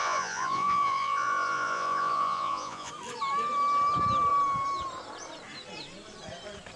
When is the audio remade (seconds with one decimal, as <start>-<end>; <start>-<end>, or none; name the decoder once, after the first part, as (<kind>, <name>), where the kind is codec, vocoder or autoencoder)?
0.0-2.9 (vocoder, Vocos)